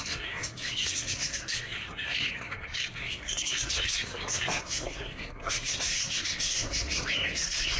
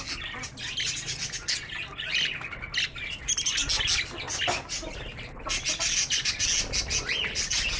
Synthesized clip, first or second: first